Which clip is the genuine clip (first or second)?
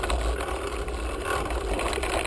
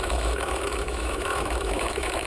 first